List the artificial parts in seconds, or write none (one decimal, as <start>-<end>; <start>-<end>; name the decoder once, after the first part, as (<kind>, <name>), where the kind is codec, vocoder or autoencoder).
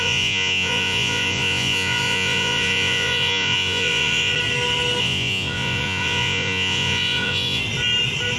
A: 0.0-4.3 (vocoder, Vocos); 5.0-7.6